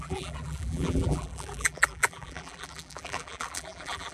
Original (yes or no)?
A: no